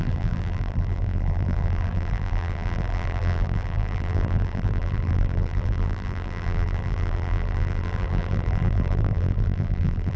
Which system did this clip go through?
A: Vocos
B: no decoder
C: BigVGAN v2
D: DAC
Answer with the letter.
C